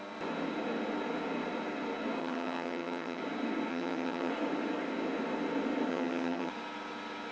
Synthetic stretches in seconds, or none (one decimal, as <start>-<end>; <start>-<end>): 2.2-3.2; 3.7-4.3; 5.9-6.5